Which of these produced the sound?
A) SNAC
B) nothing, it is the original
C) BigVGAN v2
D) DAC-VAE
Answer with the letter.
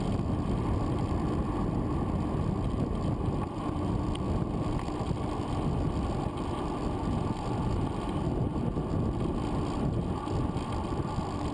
B